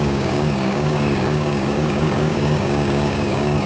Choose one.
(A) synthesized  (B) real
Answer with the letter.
A